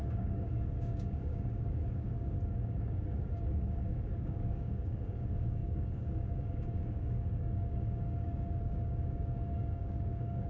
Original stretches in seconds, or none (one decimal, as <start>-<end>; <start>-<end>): none